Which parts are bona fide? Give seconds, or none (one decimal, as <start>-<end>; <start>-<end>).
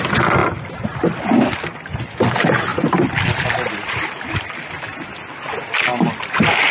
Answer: 0.0-0.4; 1.0-2.7; 5.5-6.7